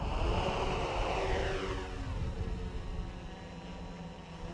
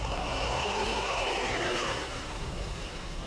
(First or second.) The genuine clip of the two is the first